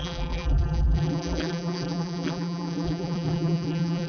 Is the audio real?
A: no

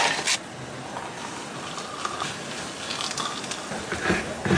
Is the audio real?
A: yes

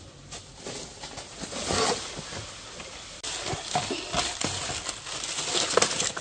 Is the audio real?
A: yes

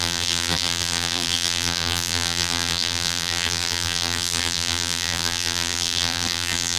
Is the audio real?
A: no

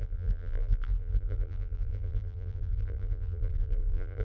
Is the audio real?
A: no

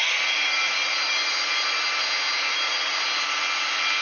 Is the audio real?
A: yes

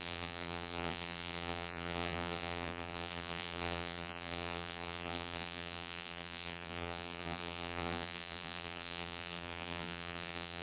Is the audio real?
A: no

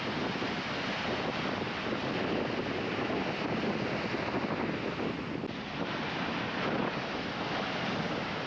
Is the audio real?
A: yes